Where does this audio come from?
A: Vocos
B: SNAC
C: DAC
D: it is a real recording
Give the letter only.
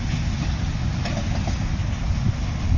D